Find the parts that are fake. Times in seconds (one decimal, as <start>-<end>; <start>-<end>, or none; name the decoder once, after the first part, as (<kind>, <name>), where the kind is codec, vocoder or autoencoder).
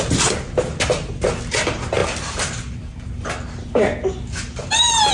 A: none